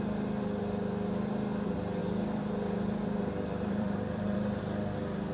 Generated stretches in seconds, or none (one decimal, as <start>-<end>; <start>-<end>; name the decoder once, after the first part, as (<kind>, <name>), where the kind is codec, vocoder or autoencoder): 2.0-4.6 (vocoder, BigVGAN v2)